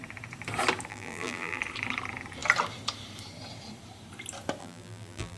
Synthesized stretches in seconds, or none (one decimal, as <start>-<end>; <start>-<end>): 0.9-1.6; 4.6-5.4